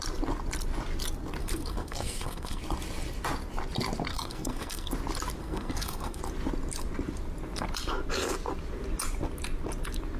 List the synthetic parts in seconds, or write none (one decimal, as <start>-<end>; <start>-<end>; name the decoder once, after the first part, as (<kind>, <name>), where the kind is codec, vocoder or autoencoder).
1.4-2.6 (codec, SNAC); 4.1-4.9; 5.4-6.2